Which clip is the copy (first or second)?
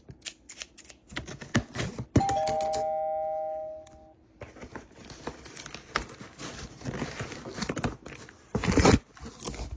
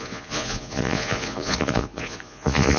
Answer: second